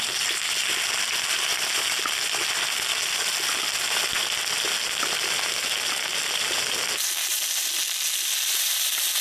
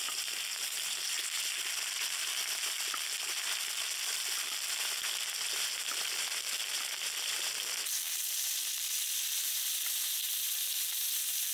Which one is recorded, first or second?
first